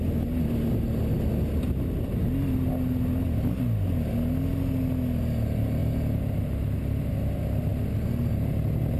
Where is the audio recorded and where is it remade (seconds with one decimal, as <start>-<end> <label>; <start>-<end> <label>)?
0.0-9.0 recorded